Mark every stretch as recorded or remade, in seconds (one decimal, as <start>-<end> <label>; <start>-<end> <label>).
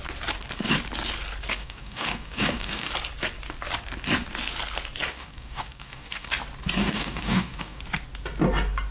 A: 0.0-1.5 recorded; 1.5-2.9 remade; 2.9-5.1 recorded; 5.1-6.3 remade; 6.3-6.8 recorded; 6.8-7.8 remade; 7.8-8.9 recorded